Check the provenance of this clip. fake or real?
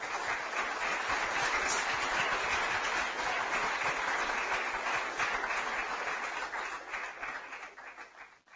real